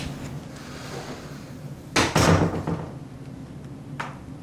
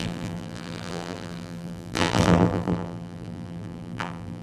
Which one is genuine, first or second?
first